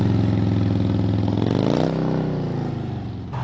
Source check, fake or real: real